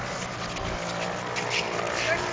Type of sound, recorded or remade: recorded